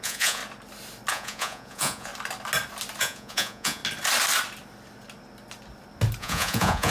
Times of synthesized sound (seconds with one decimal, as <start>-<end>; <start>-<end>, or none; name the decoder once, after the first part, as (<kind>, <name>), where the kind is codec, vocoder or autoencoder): 0.0-0.4 (vocoder, Vocos); 1.1-2.1; 3.0-3.8; 6.2-6.9